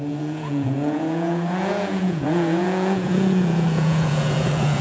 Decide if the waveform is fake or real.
fake